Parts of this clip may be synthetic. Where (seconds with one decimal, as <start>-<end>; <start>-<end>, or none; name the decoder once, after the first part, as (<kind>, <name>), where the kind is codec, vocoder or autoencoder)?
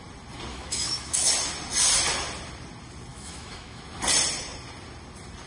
0.5-1.3 (autoencoder, DAC-VAE); 3.1-3.8